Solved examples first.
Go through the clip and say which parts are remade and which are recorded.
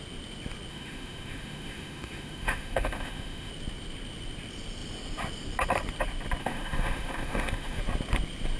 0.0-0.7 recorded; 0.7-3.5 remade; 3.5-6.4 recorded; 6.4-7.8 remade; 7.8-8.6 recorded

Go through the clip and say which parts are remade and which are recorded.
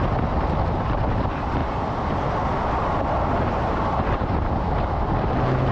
0.0-5.7 recorded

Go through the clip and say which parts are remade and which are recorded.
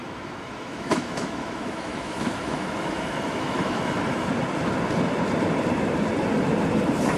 0.0-4.3 remade; 4.3-7.2 recorded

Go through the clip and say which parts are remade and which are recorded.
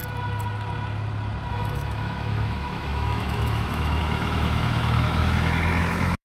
0.0-1.5 recorded; 1.5-6.2 remade